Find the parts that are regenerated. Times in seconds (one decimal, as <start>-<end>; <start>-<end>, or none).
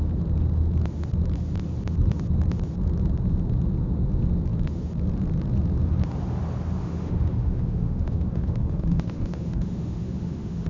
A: 6.8-10.7